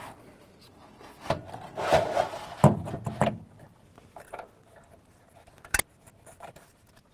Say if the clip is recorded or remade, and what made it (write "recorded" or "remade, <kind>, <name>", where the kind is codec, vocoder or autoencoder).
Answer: recorded